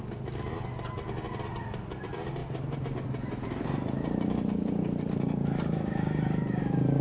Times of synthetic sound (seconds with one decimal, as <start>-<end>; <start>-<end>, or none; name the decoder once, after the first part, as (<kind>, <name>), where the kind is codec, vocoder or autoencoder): 2.4-6.6 (vocoder, BigVGAN v2)